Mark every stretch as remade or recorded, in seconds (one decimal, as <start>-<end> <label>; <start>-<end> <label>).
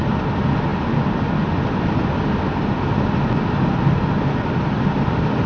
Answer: 0.0-5.5 recorded